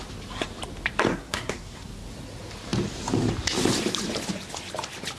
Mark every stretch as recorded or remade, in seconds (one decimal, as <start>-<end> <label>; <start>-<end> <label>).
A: 0.0-1.1 recorded; 1.1-1.9 remade; 1.9-5.2 recorded